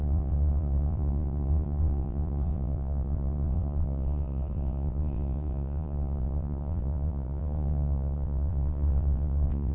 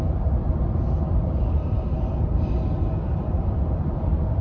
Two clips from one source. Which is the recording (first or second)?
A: second